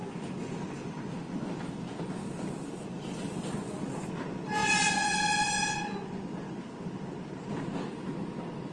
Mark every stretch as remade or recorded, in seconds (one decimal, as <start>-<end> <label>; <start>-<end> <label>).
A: 0.0-8.7 recorded